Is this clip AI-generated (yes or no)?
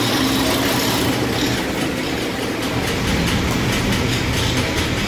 no